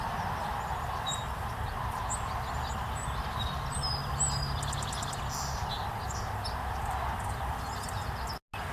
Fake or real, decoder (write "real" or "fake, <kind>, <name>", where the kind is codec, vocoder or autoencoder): real